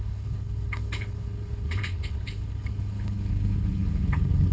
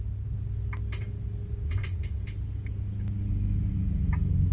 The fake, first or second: first